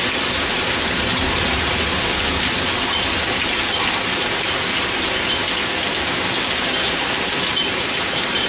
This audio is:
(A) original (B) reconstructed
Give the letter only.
B